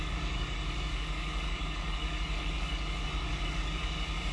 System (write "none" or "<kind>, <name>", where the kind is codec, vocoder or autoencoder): codec, DAC